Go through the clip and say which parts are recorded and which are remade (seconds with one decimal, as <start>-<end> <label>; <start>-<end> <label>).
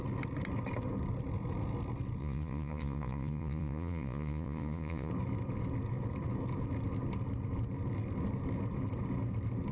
0.0-2.2 recorded; 2.2-5.1 remade; 5.1-9.7 recorded